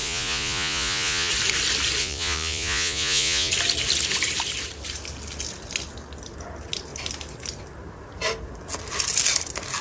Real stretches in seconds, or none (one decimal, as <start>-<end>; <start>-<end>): 1.3-2.0; 3.5-9.8